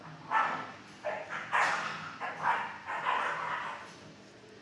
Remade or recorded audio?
recorded